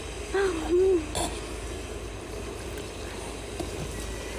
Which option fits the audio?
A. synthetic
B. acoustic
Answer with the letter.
B